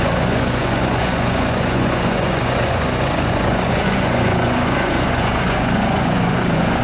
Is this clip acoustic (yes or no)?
no